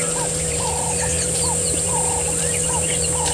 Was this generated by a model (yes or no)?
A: yes